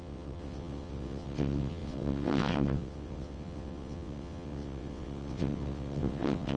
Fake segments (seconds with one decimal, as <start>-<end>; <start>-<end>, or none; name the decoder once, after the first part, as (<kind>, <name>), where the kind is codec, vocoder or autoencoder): 0.0-6.6 (vocoder, WaveNeXt)